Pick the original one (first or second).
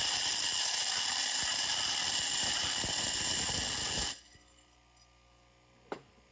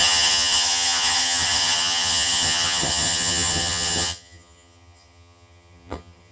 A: first